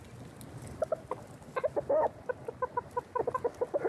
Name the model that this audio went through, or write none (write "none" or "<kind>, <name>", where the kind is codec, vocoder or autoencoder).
none